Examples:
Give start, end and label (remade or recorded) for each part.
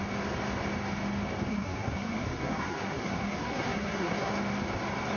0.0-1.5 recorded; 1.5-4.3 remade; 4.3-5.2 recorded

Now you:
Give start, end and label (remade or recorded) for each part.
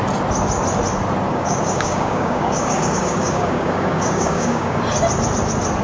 0.0-1.3 recorded; 1.3-4.8 remade; 4.8-5.8 recorded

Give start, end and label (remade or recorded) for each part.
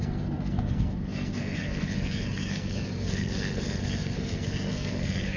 0.0-5.4 remade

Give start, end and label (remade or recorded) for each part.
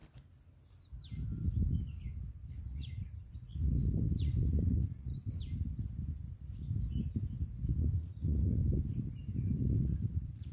0.0-2.5 recorded; 2.5-5.1 remade; 5.1-7.6 recorded; 7.6-8.6 remade; 8.6-9.6 recorded; 9.6-10.5 remade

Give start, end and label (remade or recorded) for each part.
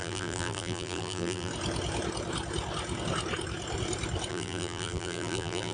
0.0-1.5 remade; 1.5-4.3 recorded; 4.3-5.7 remade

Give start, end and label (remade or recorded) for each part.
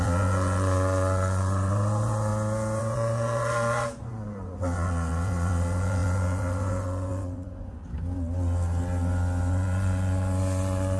0.0-2.3 remade; 2.3-2.8 recorded; 2.8-7.8 remade; 7.8-9.5 recorded; 9.5-11.0 remade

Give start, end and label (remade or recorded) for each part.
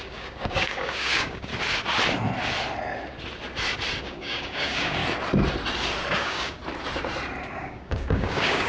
0.0-1.5 remade; 1.5-4.0 recorded; 4.0-5.0 remade; 5.0-6.1 recorded; 6.1-6.6 remade; 6.6-7.6 recorded; 7.6-8.7 remade